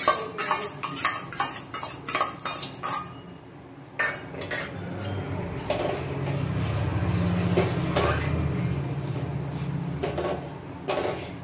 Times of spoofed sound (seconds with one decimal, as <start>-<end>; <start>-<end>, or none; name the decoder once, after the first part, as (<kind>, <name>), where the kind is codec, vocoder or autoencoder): none